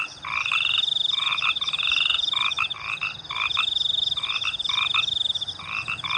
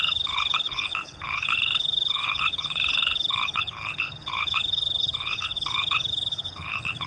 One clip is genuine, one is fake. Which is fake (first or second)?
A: second